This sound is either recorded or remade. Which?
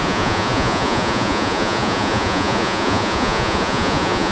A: remade